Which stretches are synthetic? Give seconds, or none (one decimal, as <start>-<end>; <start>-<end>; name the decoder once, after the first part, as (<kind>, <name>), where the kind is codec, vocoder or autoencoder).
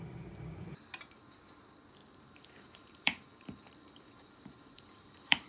2.0-5.5 (vocoder, BigVGAN v2)